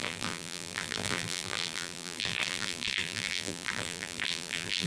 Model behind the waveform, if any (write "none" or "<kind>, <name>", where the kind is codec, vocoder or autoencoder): vocoder, BigVGAN v2